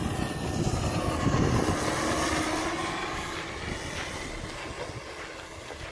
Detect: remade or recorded recorded